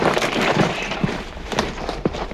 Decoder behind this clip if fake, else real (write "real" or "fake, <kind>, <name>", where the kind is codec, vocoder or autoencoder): fake, vocoder, BigVGAN v2